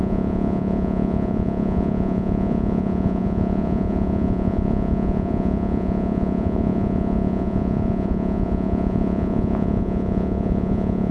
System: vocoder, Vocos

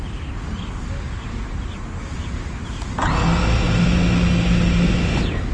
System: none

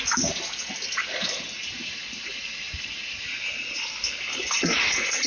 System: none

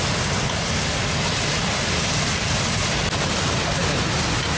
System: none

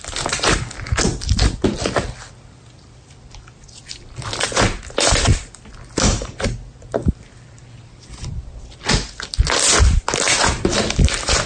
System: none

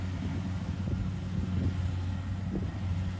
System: none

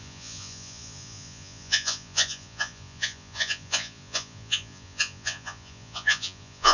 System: vocoder, Vocos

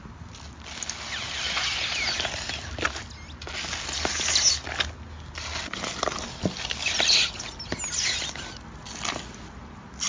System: none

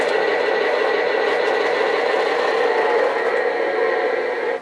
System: none